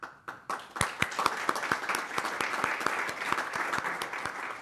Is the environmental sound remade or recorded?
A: recorded